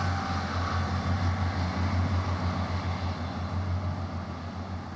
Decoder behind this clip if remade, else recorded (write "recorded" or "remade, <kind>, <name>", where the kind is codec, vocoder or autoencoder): recorded